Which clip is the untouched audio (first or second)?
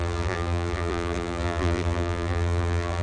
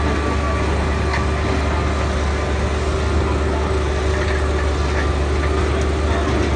second